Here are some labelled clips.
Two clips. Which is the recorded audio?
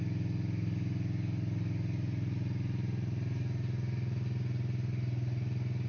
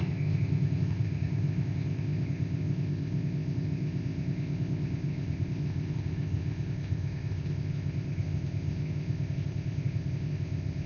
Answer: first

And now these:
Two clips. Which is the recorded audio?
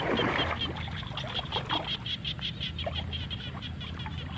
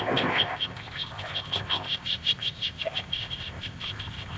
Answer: first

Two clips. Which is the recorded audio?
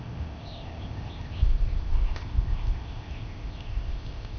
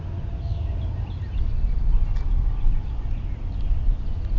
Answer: second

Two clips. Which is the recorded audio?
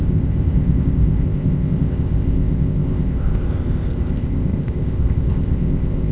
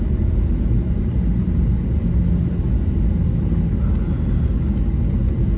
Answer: second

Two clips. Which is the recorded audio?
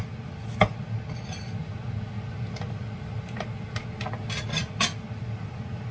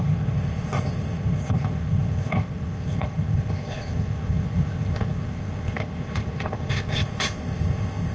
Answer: first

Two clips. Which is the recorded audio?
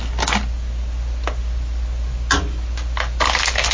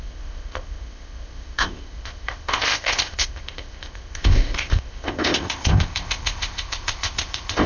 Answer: first